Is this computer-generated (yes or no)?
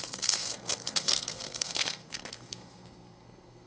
yes